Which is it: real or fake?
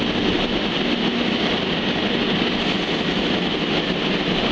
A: real